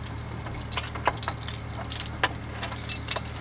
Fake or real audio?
real